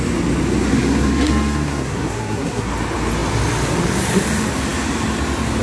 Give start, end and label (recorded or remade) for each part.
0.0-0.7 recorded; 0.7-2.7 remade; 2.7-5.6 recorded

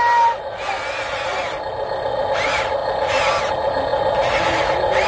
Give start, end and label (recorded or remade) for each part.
0.0-5.1 recorded